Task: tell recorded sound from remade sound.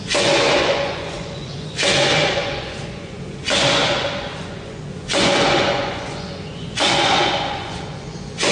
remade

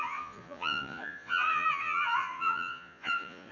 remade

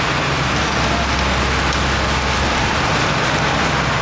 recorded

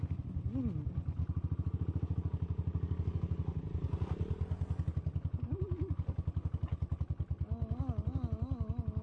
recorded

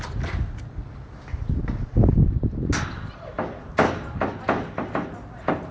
recorded